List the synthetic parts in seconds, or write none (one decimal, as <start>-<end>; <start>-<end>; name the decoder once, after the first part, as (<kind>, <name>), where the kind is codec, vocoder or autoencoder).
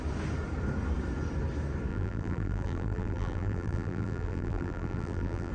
1.9-5.5 (vocoder, BigVGAN v2)